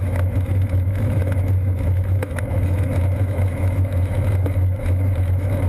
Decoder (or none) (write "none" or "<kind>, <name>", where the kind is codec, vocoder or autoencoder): autoencoder, DAC-VAE